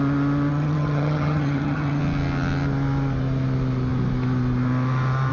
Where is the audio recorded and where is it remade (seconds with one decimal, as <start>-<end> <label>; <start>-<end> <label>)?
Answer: 0.0-0.5 recorded; 0.5-2.0 remade; 2.0-5.3 recorded